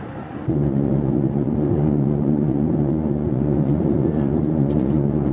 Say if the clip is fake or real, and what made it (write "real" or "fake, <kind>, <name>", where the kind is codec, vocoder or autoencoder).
fake, vocoder, Vocos